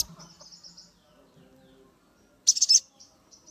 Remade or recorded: recorded